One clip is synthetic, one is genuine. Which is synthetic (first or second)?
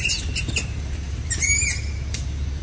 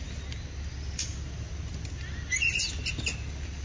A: first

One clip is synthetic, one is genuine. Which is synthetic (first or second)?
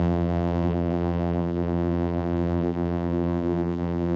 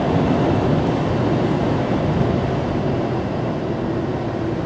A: first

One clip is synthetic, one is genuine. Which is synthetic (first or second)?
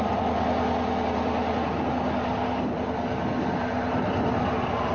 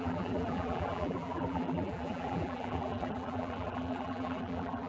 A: second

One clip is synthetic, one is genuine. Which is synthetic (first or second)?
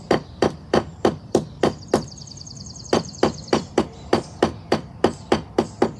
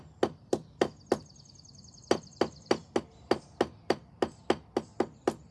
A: first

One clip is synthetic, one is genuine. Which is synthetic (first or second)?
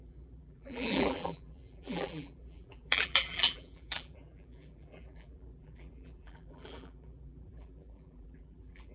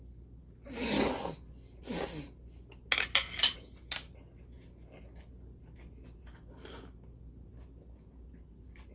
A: first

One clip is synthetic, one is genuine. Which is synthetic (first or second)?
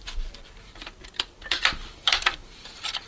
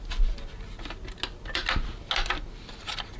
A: first